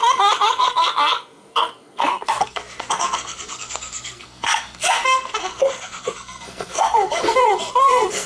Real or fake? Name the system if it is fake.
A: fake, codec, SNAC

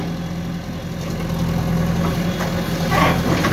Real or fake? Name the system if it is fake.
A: real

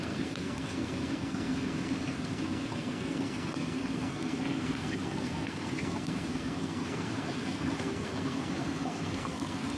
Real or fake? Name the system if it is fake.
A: fake, codec, SNAC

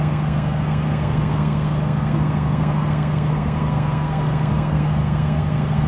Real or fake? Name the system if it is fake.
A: fake, codec, SNAC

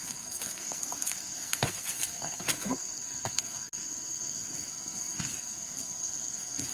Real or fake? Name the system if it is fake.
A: fake, codec, SNAC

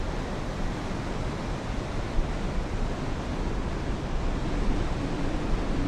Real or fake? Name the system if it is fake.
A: real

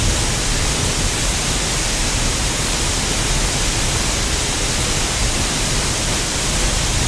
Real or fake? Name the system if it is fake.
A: real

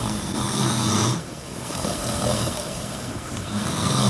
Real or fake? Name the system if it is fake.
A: fake, codec, SNAC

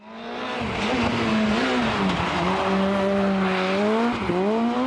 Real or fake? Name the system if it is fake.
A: real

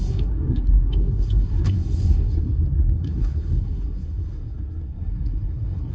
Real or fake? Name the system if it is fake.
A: fake, codec, SNAC